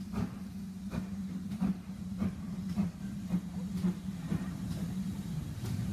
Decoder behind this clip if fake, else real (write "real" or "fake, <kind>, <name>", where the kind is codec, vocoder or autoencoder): fake, vocoder, BigVGAN v2